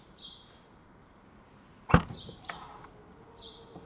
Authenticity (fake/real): fake